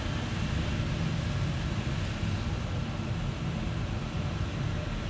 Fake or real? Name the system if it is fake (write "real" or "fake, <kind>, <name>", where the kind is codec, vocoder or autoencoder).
real